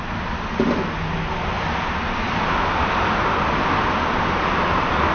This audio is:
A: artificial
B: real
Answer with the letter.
B